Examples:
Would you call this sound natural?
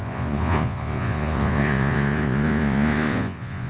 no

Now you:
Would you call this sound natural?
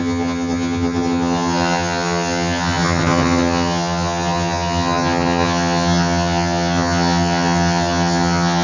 no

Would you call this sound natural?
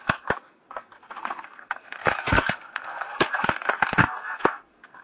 no